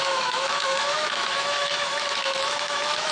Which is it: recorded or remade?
remade